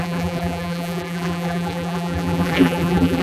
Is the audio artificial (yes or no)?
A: yes